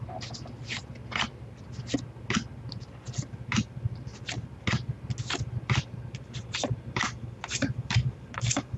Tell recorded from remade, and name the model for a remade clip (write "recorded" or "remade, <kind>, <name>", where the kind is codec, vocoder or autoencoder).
recorded